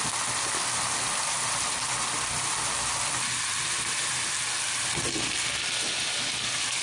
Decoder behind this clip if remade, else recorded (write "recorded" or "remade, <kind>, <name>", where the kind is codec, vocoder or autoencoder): recorded